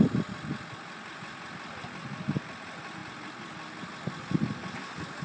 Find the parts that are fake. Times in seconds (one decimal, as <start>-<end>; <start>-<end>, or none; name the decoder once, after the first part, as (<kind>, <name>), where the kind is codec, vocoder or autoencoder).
none